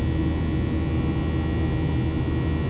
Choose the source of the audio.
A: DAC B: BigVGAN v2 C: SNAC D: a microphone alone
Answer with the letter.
D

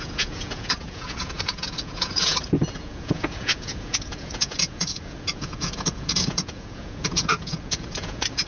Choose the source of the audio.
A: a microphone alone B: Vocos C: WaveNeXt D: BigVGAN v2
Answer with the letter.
B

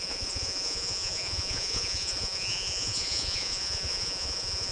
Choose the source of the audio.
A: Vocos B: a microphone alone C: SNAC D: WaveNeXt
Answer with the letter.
A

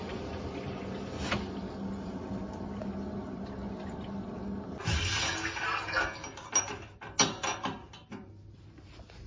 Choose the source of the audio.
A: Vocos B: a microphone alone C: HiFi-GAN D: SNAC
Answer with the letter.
B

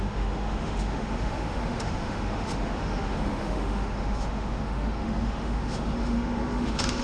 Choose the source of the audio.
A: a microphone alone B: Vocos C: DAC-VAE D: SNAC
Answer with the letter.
C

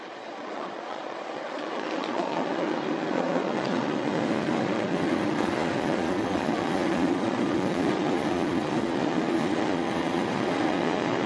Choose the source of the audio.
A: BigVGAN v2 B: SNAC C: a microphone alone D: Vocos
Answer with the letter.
D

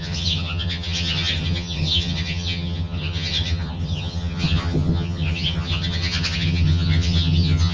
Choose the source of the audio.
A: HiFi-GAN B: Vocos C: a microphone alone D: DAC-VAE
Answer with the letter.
A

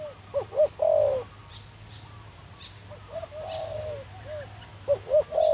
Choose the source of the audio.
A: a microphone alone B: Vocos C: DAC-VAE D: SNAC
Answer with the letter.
A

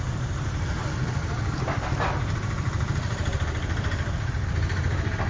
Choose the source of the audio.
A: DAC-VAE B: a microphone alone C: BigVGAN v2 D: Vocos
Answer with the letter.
C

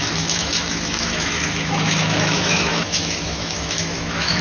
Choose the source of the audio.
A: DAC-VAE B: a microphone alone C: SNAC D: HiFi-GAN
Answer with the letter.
A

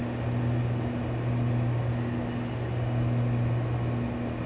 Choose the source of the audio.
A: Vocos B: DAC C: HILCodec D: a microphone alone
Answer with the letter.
D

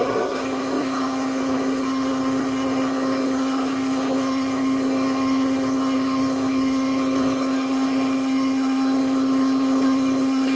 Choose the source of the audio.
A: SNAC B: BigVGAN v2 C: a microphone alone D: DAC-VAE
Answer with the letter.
A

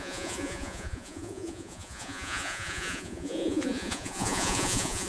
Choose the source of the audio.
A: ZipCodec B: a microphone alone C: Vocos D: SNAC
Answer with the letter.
C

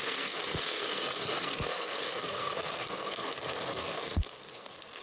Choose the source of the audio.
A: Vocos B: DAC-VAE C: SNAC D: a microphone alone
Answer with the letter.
C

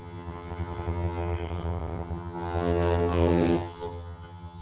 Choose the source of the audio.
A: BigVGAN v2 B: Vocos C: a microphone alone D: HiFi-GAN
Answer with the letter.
D